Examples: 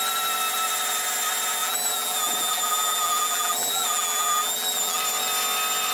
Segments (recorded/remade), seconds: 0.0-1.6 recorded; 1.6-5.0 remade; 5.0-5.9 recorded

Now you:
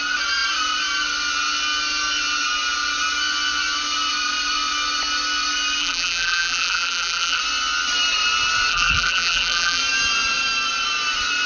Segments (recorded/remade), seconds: 0.0-5.8 recorded; 5.8-7.4 remade; 7.4-8.7 recorded; 8.7-9.8 remade; 9.8-11.5 recorded

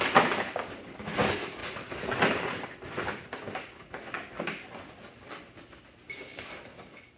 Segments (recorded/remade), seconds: 0.0-7.2 recorded

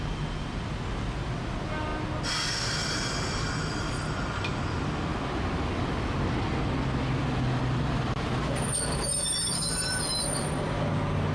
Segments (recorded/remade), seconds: 0.0-11.3 recorded

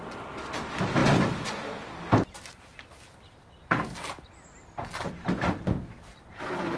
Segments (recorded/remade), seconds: 0.0-6.8 recorded

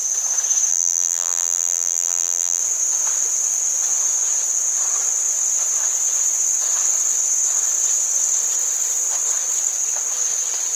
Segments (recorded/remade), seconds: 0.0-0.7 recorded; 0.7-2.6 remade; 2.6-10.8 recorded